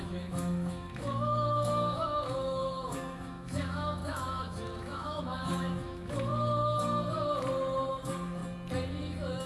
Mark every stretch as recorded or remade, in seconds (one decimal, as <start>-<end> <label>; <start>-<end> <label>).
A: 0.0-6.3 remade; 6.3-7.9 recorded; 7.9-8.4 remade; 8.4-9.0 recorded; 9.0-9.5 remade